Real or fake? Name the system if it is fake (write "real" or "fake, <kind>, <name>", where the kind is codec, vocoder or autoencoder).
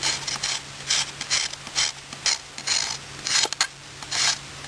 real